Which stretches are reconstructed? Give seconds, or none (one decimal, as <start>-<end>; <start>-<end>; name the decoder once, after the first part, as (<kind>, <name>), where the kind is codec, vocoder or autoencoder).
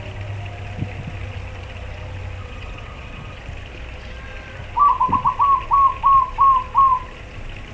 2.4-3.4 (vocoder, WaveNeXt)